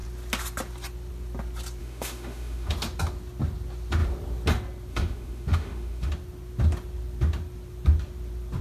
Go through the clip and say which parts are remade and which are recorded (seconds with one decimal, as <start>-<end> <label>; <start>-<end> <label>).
0.0-1.8 recorded; 1.8-2.7 remade; 2.7-4.9 recorded; 4.9-6.1 remade; 6.1-8.6 recorded